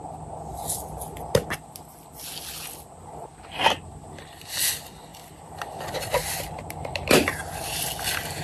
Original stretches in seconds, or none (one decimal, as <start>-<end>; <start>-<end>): 0.0-8.4